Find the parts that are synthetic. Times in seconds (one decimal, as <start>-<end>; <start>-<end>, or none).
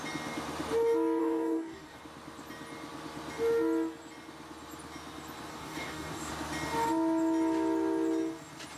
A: 1.2-2.0; 5.5-6.3